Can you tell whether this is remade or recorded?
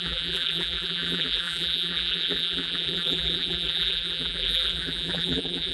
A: remade